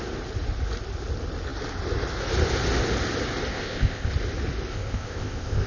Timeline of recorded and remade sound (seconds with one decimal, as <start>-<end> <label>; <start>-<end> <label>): 0.0-3.5 recorded; 3.5-4.1 remade; 4.1-4.7 recorded; 4.7-5.7 remade